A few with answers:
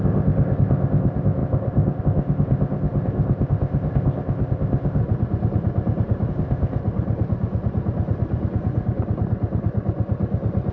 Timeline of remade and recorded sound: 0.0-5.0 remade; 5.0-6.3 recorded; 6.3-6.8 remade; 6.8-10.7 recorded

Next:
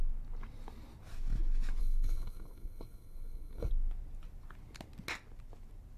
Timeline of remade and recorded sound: 0.0-1.8 recorded; 1.8-3.7 remade; 3.7-6.0 recorded